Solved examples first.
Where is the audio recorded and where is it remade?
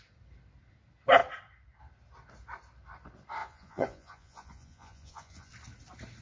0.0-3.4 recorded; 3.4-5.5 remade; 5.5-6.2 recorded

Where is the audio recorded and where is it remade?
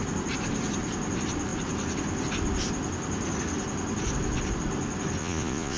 0.0-5.2 recorded; 5.2-5.8 remade